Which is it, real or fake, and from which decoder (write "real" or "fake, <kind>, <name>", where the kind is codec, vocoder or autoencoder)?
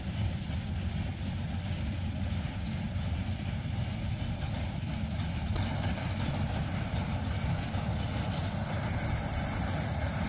real